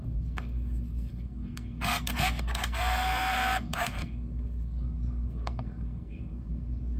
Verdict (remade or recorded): remade